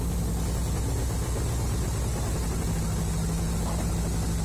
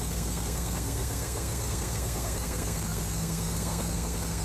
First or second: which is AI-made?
second